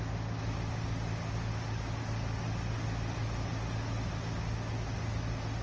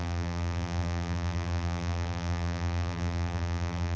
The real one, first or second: first